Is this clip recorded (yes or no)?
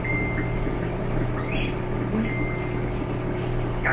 yes